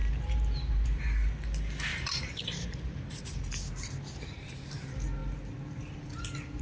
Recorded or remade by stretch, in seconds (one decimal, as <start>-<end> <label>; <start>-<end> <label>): 0.0-1.0 remade; 1.0-1.9 recorded; 1.9-4.8 remade; 4.8-6.6 recorded